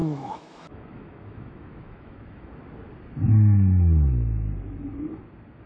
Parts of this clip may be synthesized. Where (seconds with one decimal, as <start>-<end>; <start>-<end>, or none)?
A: 0.0-2.5